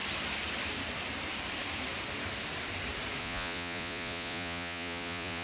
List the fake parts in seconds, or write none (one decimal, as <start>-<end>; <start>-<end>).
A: 3.2-5.4